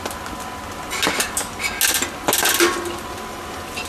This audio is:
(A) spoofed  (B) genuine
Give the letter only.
B